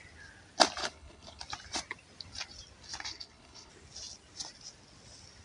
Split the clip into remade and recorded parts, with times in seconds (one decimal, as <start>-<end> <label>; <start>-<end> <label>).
0.0-0.8 recorded; 0.8-1.4 remade; 1.4-3.1 recorded; 3.1-3.7 remade; 3.7-5.4 recorded